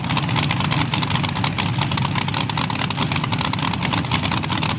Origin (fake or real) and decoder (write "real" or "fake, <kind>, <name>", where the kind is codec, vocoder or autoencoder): real